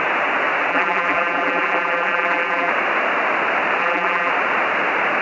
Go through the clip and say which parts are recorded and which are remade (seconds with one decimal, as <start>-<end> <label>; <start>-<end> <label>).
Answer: 0.0-0.7 recorded; 0.7-2.7 remade; 2.7-3.8 recorded; 3.8-4.3 remade; 4.3-5.2 recorded